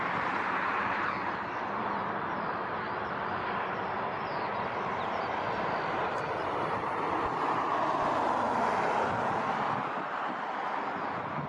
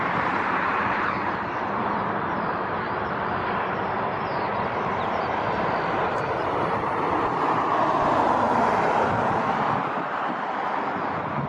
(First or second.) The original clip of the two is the first